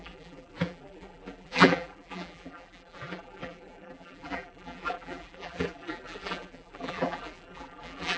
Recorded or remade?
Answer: remade